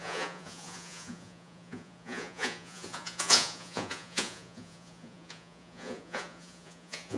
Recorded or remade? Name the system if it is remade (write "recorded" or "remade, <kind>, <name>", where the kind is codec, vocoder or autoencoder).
remade, vocoder, Vocos